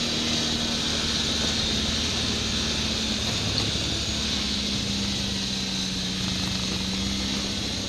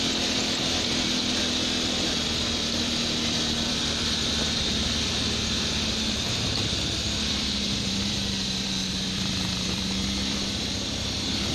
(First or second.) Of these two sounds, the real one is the first